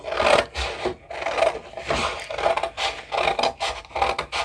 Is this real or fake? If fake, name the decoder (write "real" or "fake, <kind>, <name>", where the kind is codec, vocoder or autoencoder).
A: real